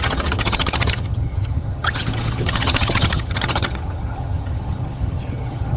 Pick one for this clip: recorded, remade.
remade